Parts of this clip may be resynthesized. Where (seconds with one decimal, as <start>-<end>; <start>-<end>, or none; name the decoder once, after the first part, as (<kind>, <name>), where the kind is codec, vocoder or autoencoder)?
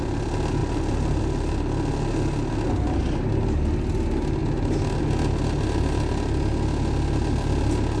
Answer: none